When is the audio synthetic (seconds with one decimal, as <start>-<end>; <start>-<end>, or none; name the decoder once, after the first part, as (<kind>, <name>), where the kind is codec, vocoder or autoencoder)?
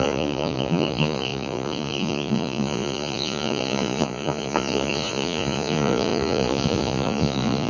0.0-7.7 (vocoder, Vocos)